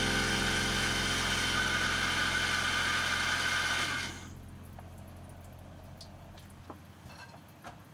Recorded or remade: recorded